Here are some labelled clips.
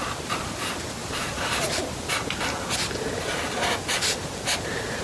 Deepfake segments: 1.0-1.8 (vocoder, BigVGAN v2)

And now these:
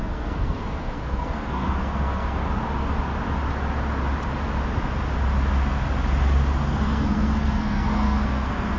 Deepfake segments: 0.0-2.4 (codec, SNAC); 6.7-8.8

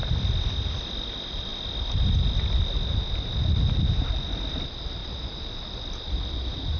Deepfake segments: 5.0-6.2 (vocoder, BigVGAN v2)

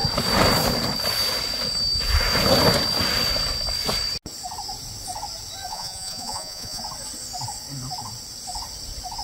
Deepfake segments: 5.7-6.8 (vocoder, Vocos)

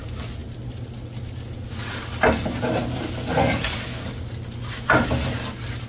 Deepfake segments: none